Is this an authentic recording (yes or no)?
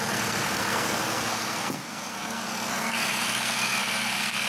no